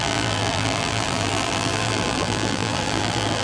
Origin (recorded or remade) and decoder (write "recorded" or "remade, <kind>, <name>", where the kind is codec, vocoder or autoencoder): remade, vocoder, BigVGAN v2